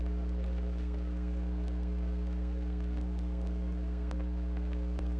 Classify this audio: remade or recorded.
remade